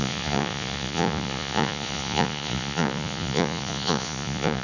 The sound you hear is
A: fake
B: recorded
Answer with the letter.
A